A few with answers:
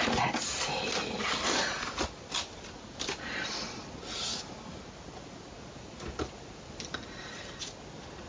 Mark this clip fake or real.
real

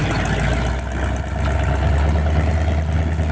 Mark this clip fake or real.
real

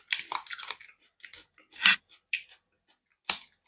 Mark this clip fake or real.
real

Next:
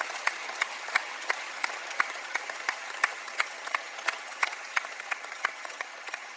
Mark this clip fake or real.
fake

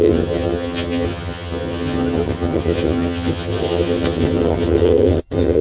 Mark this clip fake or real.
fake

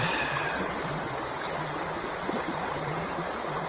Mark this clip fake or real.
real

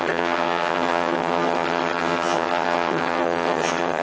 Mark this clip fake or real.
fake